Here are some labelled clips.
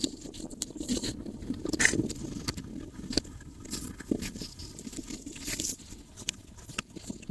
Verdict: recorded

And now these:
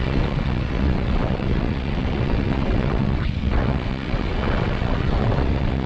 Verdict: remade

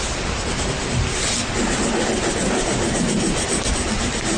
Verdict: recorded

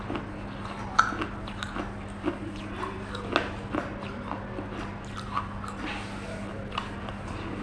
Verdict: recorded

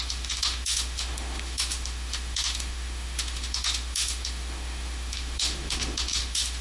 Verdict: remade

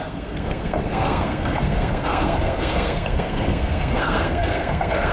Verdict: remade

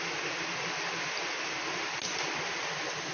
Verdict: recorded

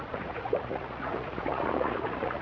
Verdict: remade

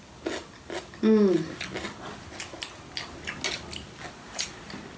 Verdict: recorded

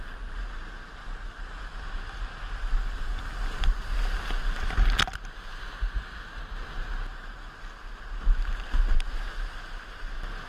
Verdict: recorded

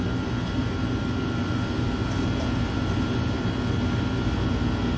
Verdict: recorded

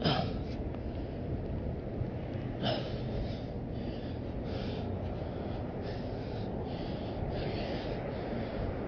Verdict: recorded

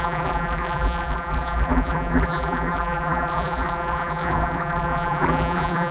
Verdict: remade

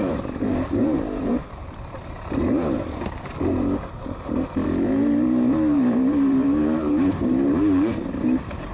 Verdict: remade